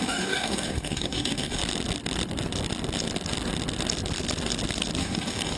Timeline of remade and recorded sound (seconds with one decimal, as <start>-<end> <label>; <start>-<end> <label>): 0.0-1.6 remade; 1.6-5.0 recorded; 5.0-5.6 remade